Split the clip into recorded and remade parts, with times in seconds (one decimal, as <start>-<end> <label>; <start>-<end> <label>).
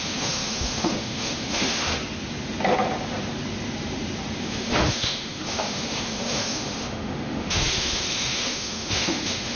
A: 0.0-1.9 remade; 1.9-4.4 recorded; 4.4-9.6 remade